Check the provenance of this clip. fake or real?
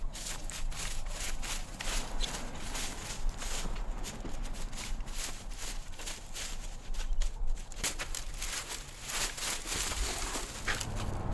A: real